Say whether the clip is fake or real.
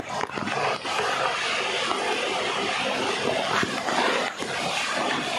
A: real